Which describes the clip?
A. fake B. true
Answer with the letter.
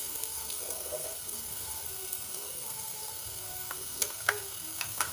A